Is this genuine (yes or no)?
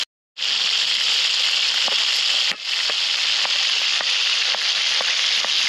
yes